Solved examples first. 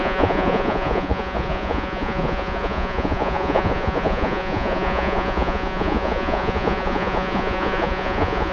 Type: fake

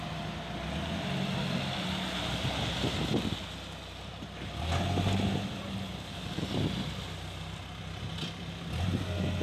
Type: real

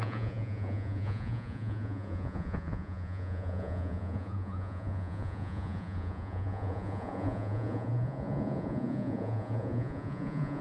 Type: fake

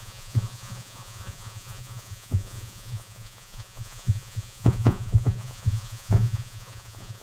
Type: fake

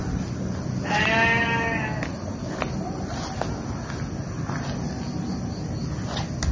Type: real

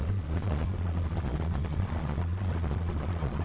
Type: fake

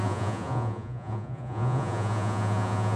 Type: fake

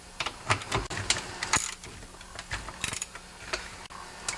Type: real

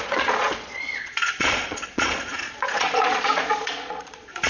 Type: fake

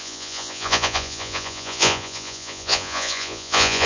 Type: fake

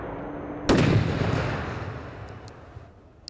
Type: real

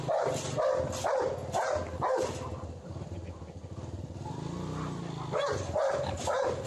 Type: real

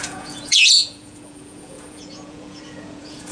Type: fake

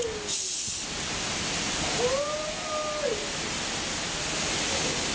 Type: real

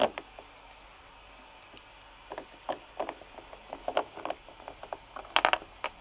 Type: real